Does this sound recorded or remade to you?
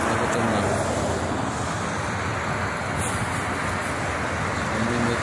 recorded